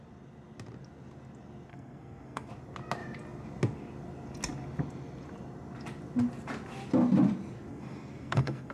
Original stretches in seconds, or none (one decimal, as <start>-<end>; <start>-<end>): 0.0-1.7; 2.5-7.7